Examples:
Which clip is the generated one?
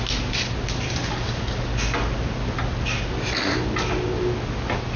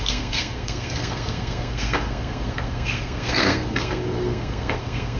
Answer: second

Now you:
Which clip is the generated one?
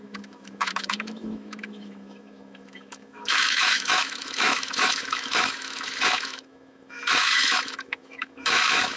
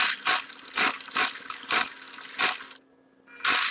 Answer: first